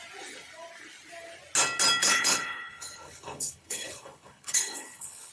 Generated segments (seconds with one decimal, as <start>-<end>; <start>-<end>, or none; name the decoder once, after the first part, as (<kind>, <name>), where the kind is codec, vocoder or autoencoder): 2.0-5.3 (codec, HILCodec)